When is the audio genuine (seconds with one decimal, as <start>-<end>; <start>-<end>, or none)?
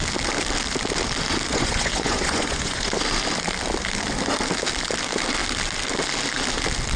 0.0-1.5; 2.9-7.0